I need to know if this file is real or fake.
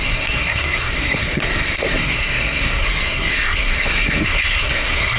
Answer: fake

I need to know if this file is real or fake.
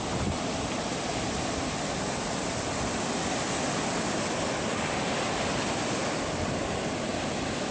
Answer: real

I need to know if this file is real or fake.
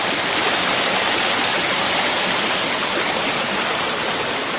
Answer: real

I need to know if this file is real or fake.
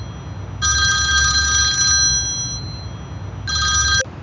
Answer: real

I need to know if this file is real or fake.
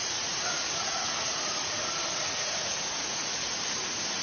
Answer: fake